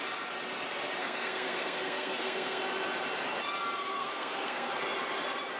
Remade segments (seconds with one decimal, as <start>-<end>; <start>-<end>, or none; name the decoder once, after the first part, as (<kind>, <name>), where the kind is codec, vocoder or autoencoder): 1.0-2.6 (codec, SNAC); 3.9-4.7